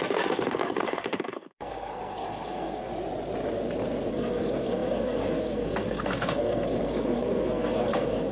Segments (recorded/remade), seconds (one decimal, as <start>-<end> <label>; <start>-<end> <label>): 0.0-2.9 remade; 2.9-4.1 recorded; 4.1-8.3 remade